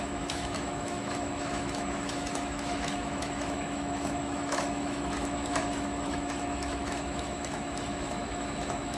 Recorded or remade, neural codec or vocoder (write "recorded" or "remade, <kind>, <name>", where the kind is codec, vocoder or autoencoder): remade, autoencoder, DAC-VAE